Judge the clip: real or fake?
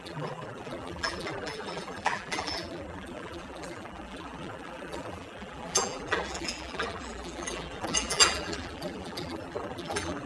fake